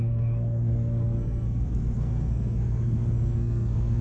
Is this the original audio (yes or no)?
no